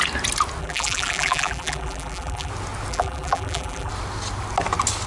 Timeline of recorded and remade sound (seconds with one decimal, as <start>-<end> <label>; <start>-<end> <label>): 0.0-0.6 recorded; 0.6-2.5 remade; 2.5-2.9 recorded; 2.9-3.9 remade; 3.9-5.1 recorded